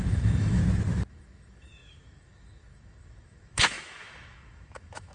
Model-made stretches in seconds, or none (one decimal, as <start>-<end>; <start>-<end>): 0.0-0.6; 1.1-5.1